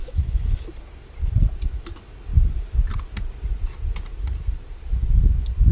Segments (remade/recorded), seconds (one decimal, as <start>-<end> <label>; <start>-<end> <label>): 0.0-0.7 remade; 0.7-5.7 recorded